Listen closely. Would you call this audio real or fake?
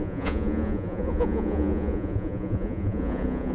fake